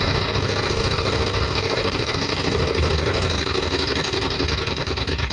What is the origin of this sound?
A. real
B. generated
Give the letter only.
B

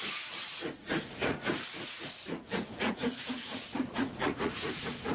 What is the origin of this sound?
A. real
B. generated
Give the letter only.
B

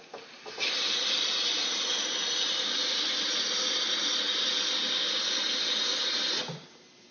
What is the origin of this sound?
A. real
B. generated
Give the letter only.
A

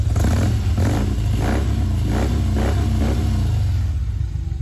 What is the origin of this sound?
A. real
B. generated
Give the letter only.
A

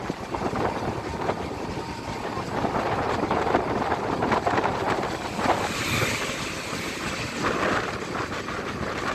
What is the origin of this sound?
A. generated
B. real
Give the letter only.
B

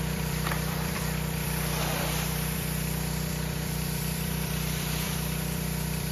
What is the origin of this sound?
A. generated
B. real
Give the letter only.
A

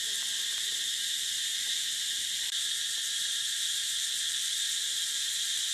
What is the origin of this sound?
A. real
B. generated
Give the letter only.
B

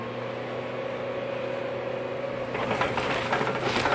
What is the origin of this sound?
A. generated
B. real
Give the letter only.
B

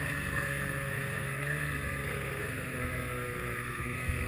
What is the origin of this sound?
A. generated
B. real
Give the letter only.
A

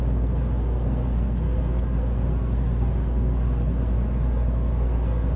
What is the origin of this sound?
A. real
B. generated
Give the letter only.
B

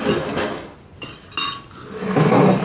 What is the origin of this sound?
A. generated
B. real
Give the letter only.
B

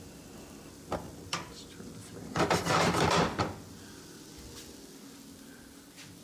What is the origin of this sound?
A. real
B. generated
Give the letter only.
A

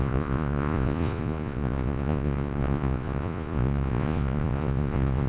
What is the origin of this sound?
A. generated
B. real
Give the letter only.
A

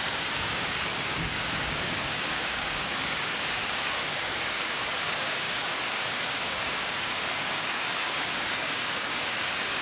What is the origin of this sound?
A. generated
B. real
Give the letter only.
A